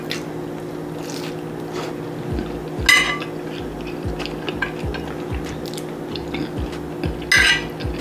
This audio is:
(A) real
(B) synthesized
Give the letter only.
A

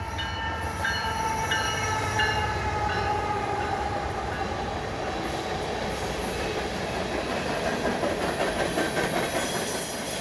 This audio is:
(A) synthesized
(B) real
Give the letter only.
B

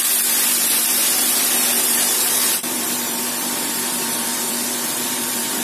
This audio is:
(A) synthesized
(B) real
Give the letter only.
A